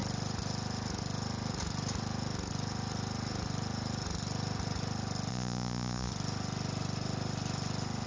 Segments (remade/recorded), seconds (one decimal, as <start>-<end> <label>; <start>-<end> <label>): 0.0-5.3 recorded; 5.3-6.1 remade; 6.1-8.1 recorded